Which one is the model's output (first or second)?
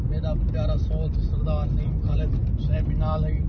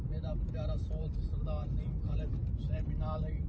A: second